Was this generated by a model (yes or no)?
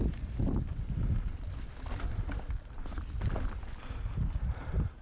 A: no